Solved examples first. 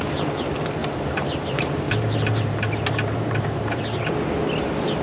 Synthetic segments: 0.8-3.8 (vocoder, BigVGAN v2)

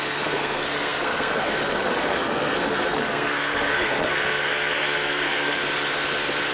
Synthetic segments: 0.0-5.6 (codec, SNAC)

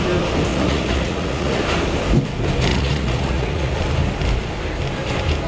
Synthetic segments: 0.5-1.6 (vocoder, Vocos); 2.7-3.8

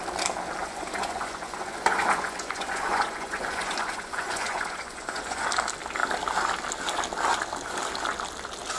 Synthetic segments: 0.6-5.4 (vocoder, Vocos)